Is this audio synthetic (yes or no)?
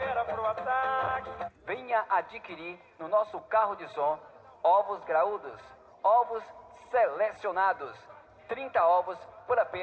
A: no